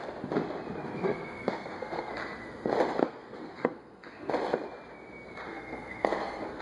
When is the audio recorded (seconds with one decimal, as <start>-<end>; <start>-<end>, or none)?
0.0-0.8; 2.1-3.0; 4.3-5.5